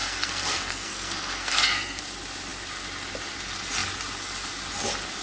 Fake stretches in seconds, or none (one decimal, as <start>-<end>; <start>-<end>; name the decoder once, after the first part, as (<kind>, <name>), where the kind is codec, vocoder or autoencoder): 0.0-2.0 (codec, SNAC)